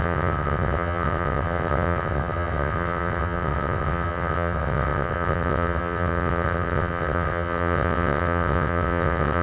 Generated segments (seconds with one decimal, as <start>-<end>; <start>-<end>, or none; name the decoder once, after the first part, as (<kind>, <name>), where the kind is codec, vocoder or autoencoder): 0.0-9.4 (vocoder, WaveNeXt)